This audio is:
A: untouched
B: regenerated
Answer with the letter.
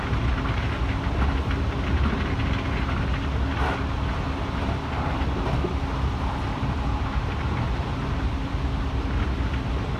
A